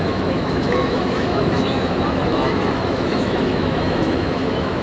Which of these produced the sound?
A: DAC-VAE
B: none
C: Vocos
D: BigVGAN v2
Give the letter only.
A